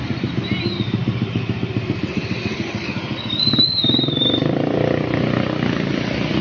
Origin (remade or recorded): recorded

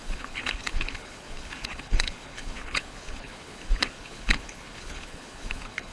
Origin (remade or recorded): remade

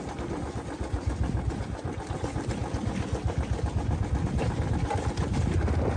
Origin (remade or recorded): recorded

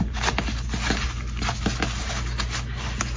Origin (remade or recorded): recorded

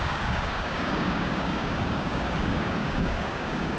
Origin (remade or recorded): remade